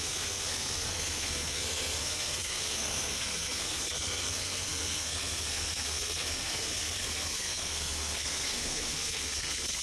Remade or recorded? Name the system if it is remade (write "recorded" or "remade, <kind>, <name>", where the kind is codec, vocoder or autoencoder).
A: remade, codec, SNAC